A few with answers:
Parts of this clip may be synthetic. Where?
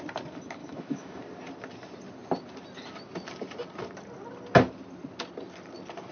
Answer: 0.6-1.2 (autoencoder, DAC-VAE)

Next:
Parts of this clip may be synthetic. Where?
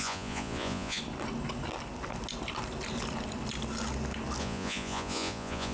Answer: 0.0-1.0 (vocoder, Vocos); 4.4-5.7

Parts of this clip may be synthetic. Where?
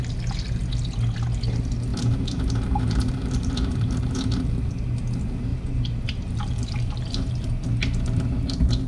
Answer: 1.9-4.4 (vocoder, BigVGAN v2); 5.5-7.5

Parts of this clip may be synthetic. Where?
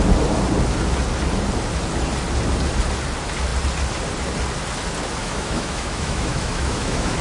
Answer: 5.2-7.2 (autoencoder, DAC-VAE)